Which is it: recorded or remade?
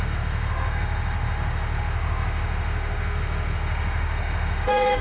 remade